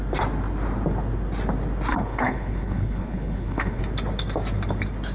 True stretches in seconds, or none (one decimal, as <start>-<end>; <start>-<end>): 0.0-1.9; 3.8-5.1